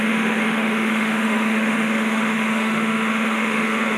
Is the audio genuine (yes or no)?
no